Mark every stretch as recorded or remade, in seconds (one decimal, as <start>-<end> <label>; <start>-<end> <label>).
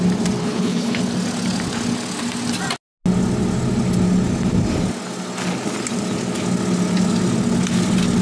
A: 0.0-0.4 recorded; 0.4-1.0 remade; 1.0-8.2 recorded